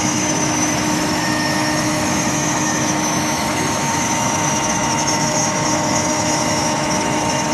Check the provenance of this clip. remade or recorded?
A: remade